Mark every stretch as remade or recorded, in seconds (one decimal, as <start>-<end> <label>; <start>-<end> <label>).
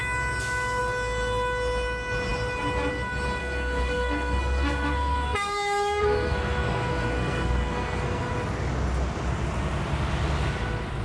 0.0-3.4 recorded; 3.4-8.3 remade; 8.3-11.0 recorded